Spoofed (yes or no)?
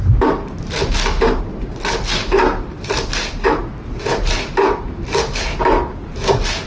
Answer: no